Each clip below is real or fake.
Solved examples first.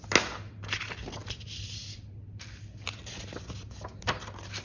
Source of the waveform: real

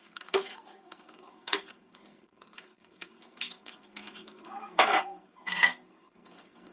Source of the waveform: fake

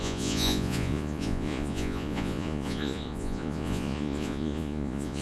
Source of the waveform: fake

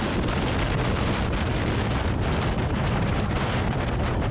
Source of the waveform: real